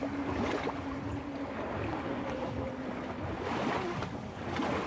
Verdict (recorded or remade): recorded